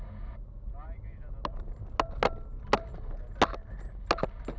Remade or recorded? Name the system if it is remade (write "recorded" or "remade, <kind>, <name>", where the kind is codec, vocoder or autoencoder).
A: recorded